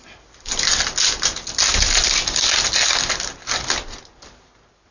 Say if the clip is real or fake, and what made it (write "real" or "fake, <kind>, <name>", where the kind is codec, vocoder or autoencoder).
real